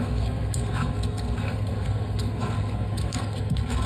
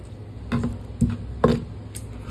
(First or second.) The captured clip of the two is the second